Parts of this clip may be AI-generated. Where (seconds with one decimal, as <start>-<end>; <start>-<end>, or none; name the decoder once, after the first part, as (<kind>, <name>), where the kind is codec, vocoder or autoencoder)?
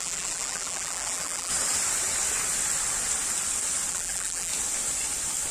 0.0-1.5 (vocoder, BigVGAN v2); 3.9-4.5